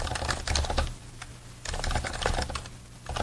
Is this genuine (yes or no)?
yes